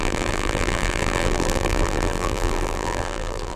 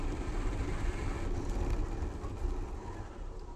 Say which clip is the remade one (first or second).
first